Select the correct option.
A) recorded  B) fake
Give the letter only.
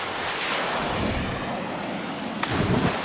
A